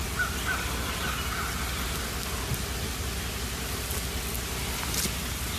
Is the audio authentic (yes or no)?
yes